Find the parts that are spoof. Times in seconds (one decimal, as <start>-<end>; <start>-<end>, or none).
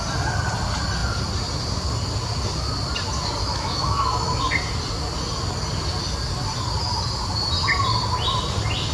3.4-4.4